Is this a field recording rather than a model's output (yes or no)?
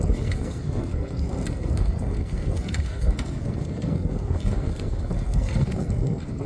no